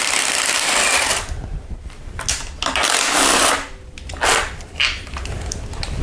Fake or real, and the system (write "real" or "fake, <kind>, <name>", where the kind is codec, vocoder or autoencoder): real